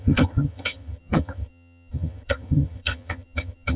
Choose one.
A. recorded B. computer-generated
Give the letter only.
B